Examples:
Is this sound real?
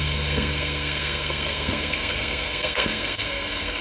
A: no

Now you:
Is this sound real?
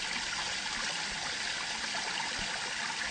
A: yes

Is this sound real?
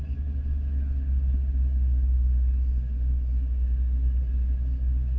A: yes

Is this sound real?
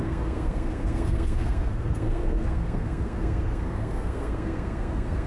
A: no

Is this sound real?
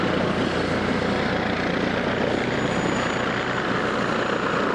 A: yes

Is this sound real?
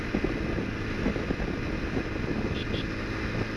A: yes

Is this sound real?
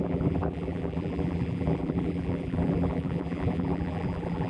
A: no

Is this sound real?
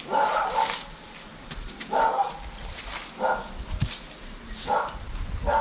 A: yes